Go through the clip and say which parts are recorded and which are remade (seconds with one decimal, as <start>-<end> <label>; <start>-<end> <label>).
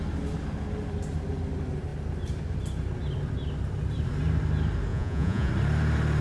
0.0-4.9 recorded; 4.9-5.5 remade; 5.5-6.2 recorded